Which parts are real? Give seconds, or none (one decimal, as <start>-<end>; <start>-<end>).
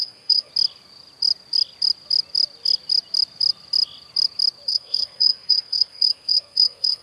0.5-4.7